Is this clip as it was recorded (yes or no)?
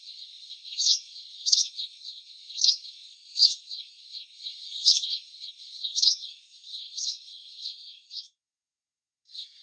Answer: no